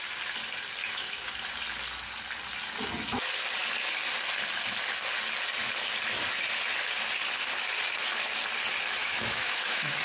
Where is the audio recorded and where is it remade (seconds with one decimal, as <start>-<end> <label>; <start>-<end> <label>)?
0.0-0.8 recorded; 0.8-1.3 remade; 1.3-9.0 recorded; 9.0-10.0 remade